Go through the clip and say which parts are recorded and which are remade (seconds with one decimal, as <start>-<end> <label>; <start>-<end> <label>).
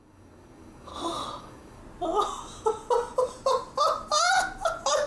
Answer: 0.0-0.9 remade; 0.9-1.4 recorded; 1.4-1.8 remade; 1.8-5.1 recorded